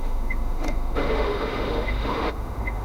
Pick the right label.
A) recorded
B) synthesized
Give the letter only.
B